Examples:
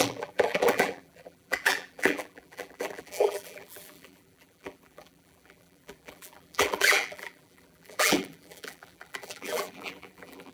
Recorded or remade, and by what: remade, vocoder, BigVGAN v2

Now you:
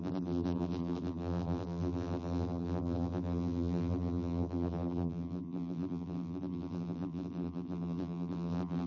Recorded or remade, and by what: remade, vocoder, BigVGAN v2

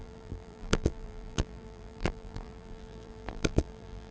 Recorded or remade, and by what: remade, vocoder, BigVGAN v2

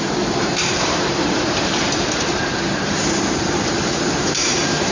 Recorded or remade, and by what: remade, vocoder, BigVGAN v2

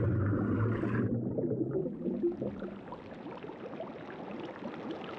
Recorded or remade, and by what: recorded